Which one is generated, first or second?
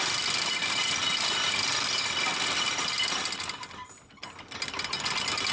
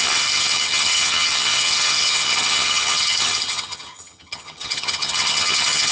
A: second